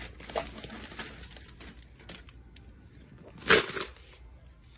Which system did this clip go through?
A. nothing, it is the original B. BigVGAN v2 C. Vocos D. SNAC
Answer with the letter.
A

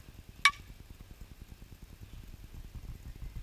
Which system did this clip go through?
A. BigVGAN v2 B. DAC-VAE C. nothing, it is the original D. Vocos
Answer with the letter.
C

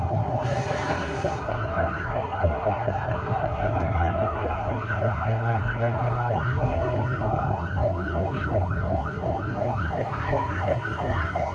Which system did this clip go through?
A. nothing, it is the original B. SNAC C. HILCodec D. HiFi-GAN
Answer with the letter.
B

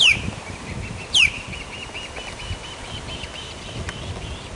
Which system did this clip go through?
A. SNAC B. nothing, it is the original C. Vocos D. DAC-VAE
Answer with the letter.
B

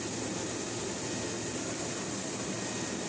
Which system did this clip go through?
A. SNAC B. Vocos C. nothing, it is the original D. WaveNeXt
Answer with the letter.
C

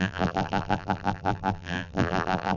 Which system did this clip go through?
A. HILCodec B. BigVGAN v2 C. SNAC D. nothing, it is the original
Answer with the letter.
B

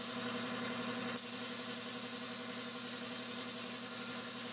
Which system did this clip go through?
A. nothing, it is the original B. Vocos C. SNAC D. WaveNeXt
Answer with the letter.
A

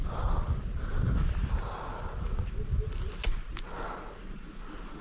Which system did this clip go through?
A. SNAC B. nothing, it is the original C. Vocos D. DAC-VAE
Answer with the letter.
B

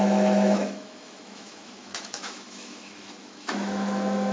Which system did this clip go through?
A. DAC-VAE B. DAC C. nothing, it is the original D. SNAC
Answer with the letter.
A